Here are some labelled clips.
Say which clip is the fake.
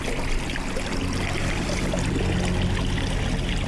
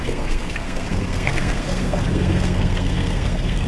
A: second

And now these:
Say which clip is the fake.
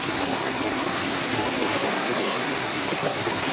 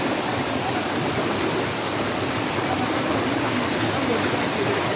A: first